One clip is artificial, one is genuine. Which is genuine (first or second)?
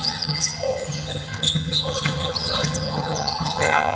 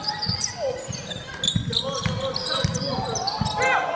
second